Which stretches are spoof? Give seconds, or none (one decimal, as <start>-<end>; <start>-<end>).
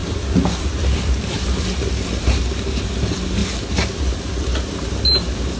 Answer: 0.0-2.4